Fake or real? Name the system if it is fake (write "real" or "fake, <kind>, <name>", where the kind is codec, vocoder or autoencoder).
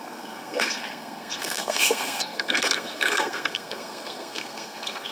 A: fake, codec, SNAC